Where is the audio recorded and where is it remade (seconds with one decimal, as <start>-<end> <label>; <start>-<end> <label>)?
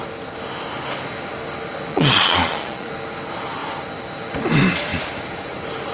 0.0-1.9 recorded; 1.9-2.9 remade; 2.9-5.9 recorded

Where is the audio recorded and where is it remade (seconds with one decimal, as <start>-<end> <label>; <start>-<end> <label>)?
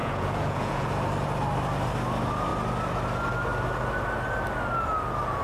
0.0-0.9 remade; 0.9-5.4 recorded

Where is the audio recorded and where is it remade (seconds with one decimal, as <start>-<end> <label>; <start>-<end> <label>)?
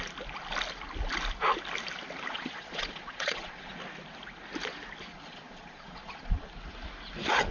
0.0-2.3 recorded; 2.3-3.7 remade; 3.7-5.1 recorded; 5.1-6.5 remade; 6.5-7.5 recorded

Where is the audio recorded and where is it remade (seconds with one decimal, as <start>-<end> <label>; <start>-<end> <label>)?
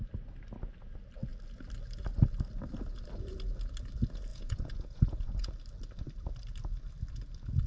0.0-4.3 recorded; 4.3-5.5 remade; 5.5-7.7 recorded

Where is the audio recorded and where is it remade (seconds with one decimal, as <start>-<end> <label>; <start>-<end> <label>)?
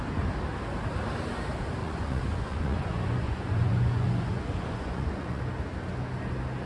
0.0-1.8 recorded; 1.8-5.4 remade; 5.4-6.7 recorded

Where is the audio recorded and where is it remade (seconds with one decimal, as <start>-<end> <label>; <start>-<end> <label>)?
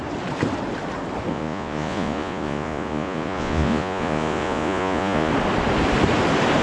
0.0-1.3 recorded; 1.3-5.3 remade; 5.3-6.6 recorded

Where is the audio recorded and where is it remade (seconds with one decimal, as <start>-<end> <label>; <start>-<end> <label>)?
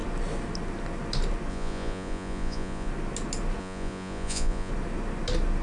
0.0-1.5 recorded; 1.5-2.9 remade; 2.9-3.6 recorded; 3.6-4.7 remade; 4.7-5.6 recorded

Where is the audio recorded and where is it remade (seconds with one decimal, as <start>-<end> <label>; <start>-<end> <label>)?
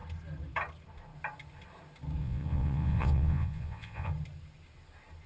0.0-2.2 recorded; 2.2-4.1 remade; 4.1-5.3 recorded